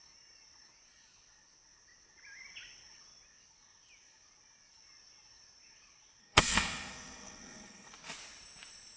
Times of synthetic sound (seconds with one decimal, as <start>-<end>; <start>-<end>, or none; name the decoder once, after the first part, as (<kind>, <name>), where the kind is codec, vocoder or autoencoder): 6.2-7.9 (codec, SNAC)